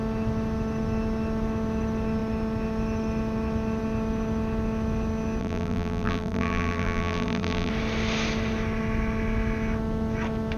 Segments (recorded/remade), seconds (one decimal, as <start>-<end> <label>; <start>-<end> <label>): 0.0-5.4 recorded; 5.4-7.7 remade; 7.7-10.6 recorded